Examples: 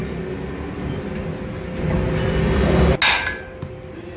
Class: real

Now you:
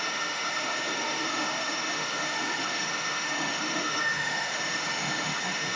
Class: fake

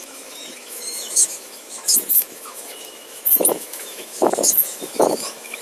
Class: fake